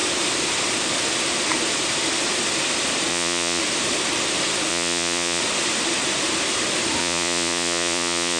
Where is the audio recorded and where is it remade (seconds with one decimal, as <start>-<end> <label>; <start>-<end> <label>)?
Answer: 0.0-3.1 recorded; 3.1-3.6 remade; 3.6-4.7 recorded; 4.7-5.4 remade; 5.4-7.0 recorded; 7.0-8.4 remade